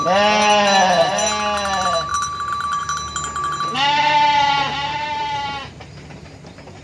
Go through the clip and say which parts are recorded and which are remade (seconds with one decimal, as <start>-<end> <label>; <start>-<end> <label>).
0.0-6.8 recorded